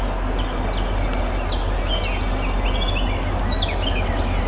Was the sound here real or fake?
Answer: real